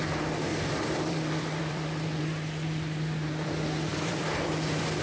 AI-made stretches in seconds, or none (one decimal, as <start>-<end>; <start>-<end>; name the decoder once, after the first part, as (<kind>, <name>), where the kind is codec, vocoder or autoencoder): 0.5-3.5 (vocoder, BigVGAN v2); 3.9-5.0